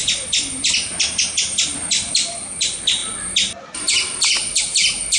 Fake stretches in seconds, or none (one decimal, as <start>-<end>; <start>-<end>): none